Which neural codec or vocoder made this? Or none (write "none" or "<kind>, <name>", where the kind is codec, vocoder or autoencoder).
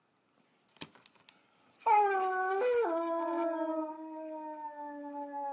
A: none